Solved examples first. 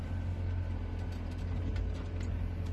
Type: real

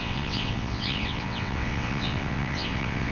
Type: fake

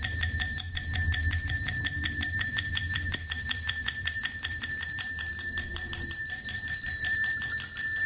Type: fake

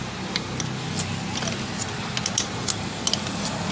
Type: real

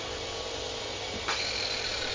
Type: real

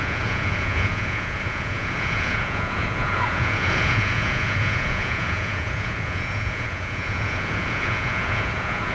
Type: fake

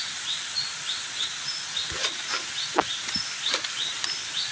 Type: real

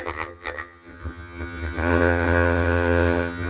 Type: fake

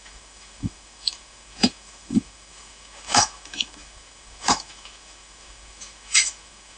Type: fake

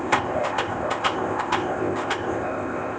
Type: fake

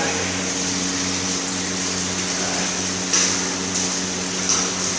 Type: fake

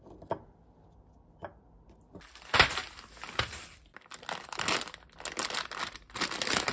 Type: real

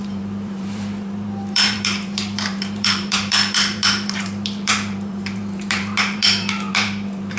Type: fake